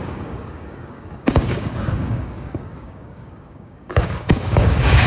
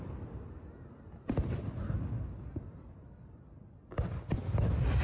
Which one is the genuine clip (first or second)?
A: second